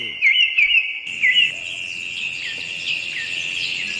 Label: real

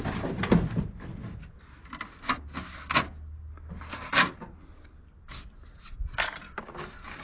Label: real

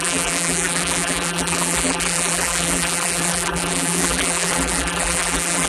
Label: fake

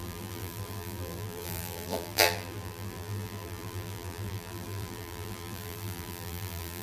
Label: fake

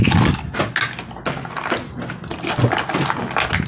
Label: real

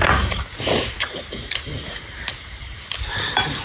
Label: fake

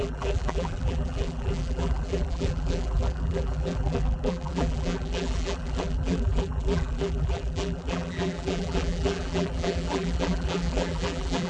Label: fake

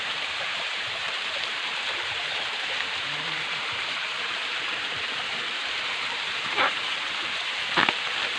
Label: fake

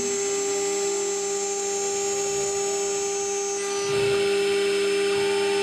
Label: real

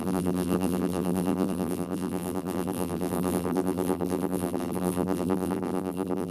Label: fake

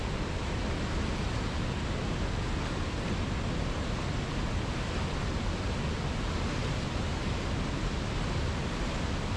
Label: real